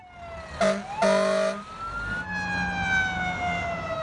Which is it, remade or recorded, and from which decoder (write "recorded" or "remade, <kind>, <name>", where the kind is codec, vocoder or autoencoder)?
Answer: recorded